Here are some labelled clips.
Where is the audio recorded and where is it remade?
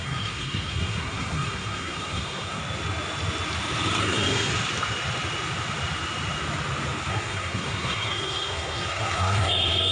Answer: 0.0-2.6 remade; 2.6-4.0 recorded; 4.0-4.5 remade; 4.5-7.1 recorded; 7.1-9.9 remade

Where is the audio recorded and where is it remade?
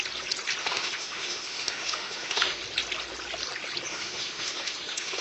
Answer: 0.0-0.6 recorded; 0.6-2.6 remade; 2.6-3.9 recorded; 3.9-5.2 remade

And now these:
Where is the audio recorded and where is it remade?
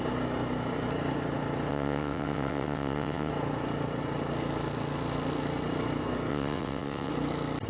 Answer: 0.0-1.7 recorded; 1.7-3.3 remade; 3.3-6.3 recorded; 6.3-7.1 remade; 7.1-7.7 recorded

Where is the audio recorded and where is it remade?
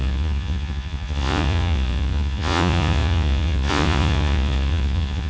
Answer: 0.0-5.3 remade